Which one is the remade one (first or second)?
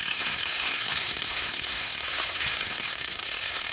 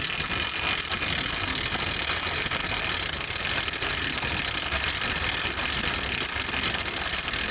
first